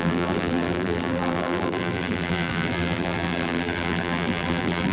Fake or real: fake